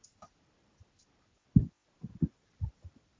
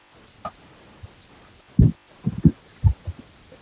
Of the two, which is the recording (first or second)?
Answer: second